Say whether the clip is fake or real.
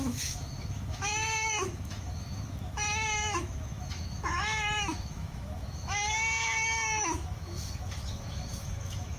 fake